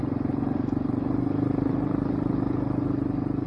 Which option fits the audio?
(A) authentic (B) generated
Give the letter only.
A